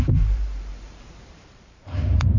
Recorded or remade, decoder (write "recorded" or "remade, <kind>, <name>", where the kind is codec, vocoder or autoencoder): remade, vocoder, BigVGAN v2